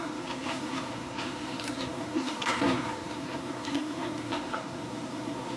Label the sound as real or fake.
fake